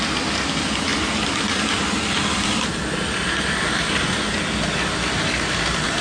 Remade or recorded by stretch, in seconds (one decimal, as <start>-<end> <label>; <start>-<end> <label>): 0.0-6.0 recorded